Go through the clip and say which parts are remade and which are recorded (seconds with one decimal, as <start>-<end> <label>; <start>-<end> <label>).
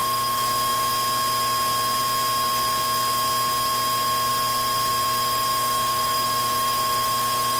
0.0-0.9 remade; 0.9-5.5 recorded; 5.5-7.6 remade